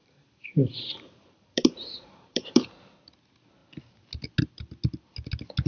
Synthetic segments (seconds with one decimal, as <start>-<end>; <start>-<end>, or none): 0.0-2.7